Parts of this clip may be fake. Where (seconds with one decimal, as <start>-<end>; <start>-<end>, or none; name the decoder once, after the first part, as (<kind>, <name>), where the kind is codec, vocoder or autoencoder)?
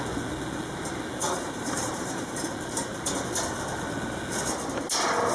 1.2-2.4 (vocoder, BigVGAN v2)